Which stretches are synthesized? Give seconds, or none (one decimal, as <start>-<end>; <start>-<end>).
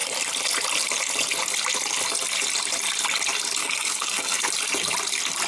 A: 3.6-4.5